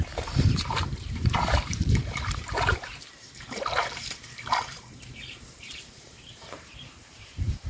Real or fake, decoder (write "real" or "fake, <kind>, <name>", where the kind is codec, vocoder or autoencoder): fake, vocoder, BigVGAN v2